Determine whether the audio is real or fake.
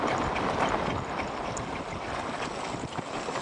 real